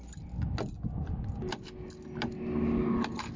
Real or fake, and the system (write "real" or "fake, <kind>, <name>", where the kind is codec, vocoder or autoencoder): real